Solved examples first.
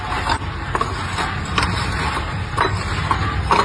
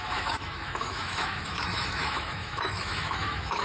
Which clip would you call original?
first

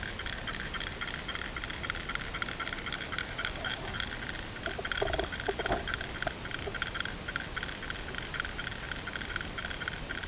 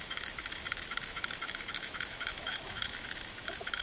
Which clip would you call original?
first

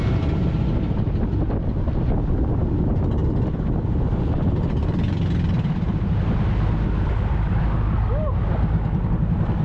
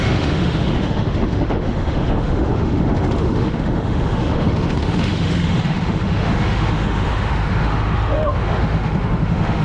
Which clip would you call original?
first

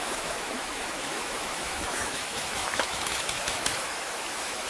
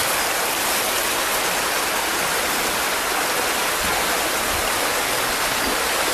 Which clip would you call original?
second